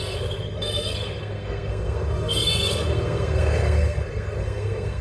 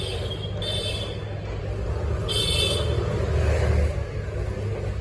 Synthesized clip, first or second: first